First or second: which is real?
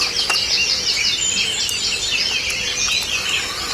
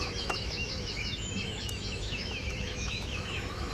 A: first